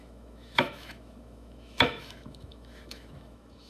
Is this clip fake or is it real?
fake